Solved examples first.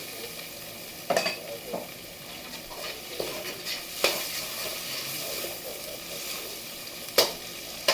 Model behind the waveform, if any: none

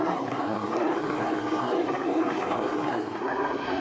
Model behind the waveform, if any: codec, SNAC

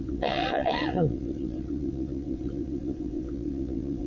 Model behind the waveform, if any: vocoder, WaveNeXt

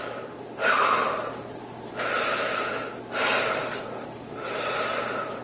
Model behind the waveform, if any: none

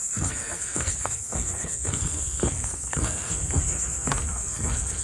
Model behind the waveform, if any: codec, SNAC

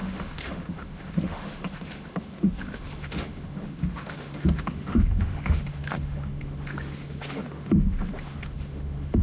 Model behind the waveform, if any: autoencoder, DAC-VAE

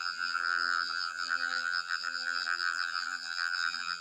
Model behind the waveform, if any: vocoder, BigVGAN v2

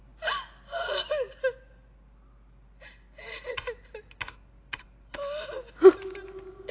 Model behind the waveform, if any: none